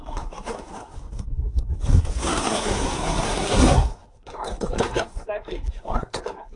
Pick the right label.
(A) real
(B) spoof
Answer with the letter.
B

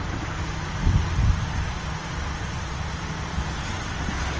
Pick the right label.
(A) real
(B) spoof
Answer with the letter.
A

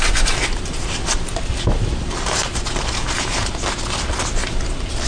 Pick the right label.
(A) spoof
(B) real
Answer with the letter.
B